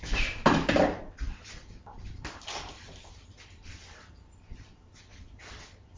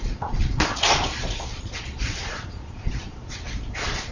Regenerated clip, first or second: second